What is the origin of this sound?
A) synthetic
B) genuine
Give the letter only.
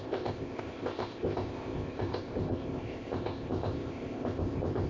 A